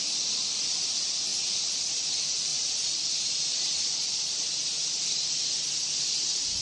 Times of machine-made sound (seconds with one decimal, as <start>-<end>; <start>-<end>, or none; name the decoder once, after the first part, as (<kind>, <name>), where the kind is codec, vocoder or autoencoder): 0.0-4.8 (vocoder, BigVGAN v2); 6.0-6.6